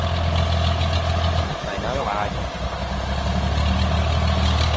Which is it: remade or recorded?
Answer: recorded